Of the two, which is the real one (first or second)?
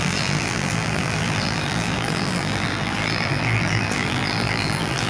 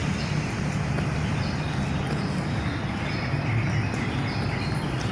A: second